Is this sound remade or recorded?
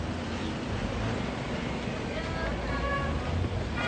recorded